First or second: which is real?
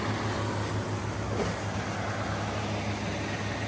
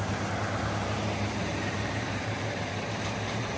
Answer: first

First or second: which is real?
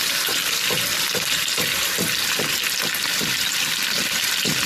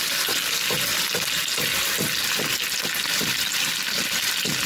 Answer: second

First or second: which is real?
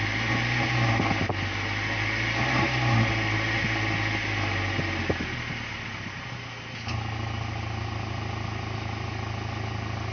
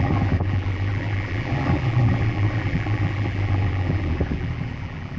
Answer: first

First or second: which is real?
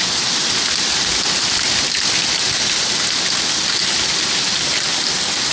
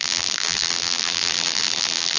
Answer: first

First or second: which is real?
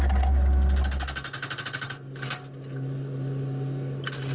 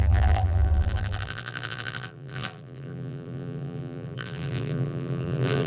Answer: first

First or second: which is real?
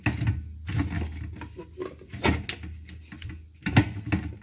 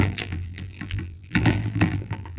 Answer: first